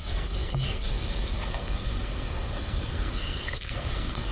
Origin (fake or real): fake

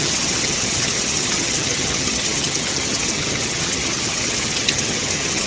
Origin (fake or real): fake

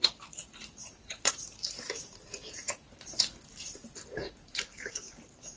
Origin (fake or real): fake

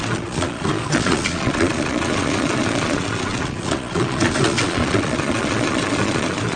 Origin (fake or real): fake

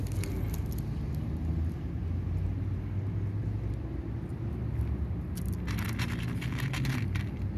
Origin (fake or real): real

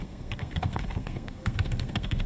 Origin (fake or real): fake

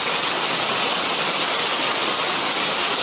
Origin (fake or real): real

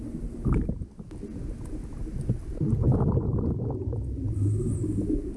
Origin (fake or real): real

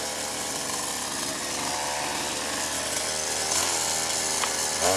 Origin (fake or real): fake